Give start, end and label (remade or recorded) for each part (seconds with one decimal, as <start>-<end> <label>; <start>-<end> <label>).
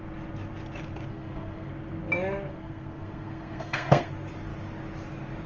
0.0-1.1 recorded; 1.1-1.7 remade; 1.7-2.5 recorded; 2.5-4.1 remade; 4.1-5.5 recorded